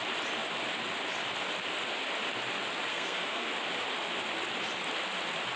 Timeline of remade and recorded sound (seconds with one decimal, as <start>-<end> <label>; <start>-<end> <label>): 0.0-2.9 recorded; 2.9-3.5 remade; 3.5-5.6 recorded